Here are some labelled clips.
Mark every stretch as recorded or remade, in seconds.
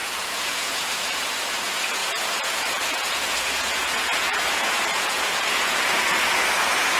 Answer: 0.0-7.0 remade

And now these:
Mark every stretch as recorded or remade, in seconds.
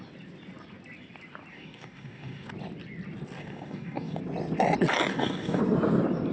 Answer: 0.0-1.5 recorded; 1.5-2.5 remade; 2.5-3.4 recorded; 3.4-4.2 remade; 4.2-5.1 recorded; 5.1-5.6 remade; 5.6-6.3 recorded